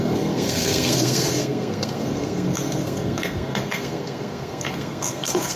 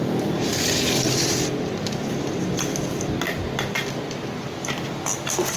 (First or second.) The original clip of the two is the second